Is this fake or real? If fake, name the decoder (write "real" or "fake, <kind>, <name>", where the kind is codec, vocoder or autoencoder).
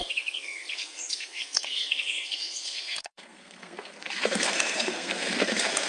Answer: fake, codec, SNAC